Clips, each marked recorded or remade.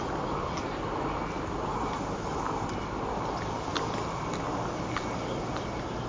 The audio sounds recorded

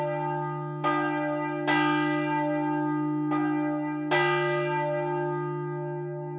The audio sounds recorded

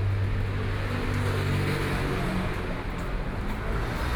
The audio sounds recorded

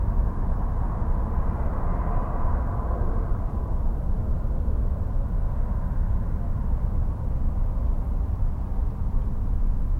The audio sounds recorded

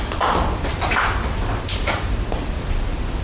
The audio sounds recorded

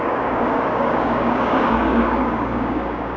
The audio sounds remade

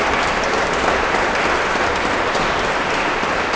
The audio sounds recorded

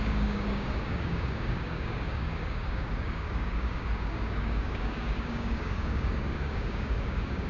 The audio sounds remade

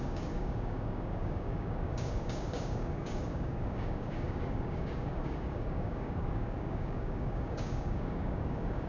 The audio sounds remade